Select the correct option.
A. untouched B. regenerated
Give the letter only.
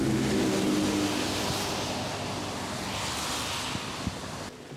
A